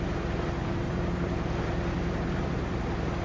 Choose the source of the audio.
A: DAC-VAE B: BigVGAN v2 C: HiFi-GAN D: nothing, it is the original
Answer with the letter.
B